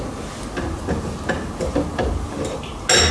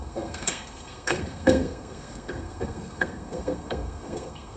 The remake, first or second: second